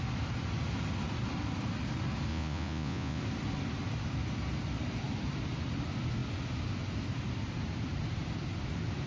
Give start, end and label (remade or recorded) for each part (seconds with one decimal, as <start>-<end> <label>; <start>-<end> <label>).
0.0-2.3 recorded; 2.3-3.2 remade; 3.2-9.1 recorded